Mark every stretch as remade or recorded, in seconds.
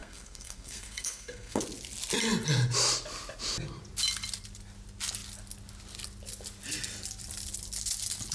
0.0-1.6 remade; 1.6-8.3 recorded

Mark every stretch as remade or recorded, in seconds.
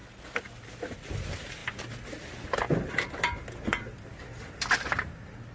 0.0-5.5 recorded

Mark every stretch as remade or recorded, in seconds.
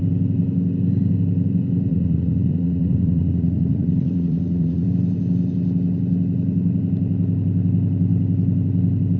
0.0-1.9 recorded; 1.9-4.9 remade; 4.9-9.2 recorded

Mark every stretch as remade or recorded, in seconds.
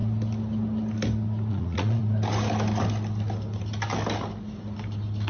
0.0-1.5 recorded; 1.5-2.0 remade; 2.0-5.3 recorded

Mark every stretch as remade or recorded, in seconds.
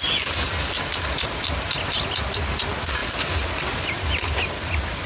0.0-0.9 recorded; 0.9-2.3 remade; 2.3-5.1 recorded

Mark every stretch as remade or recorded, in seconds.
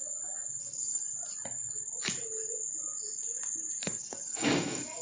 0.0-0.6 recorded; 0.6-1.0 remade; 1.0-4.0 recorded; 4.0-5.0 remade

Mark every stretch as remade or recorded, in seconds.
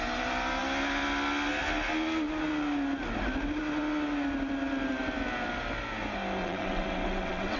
0.0-6.4 recorded; 6.4-7.6 remade